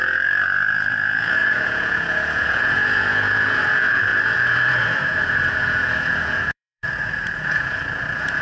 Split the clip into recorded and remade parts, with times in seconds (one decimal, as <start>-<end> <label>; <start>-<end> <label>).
0.0-8.4 remade